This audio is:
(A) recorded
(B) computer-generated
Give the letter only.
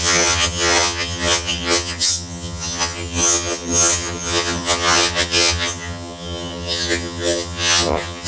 B